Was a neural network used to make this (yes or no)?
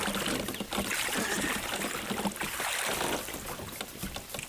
no